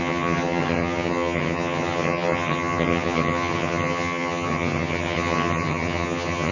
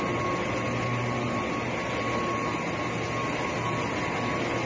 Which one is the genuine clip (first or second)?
second